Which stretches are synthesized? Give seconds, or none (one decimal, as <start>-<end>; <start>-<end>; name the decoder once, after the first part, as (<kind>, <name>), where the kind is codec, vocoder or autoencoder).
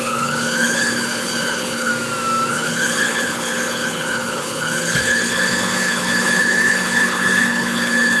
0.0-1.9 (codec, HILCodec); 2.5-8.2